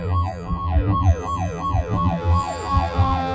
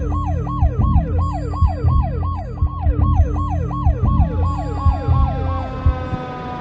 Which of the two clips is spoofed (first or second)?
first